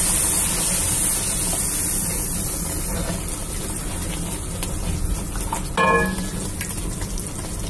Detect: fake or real real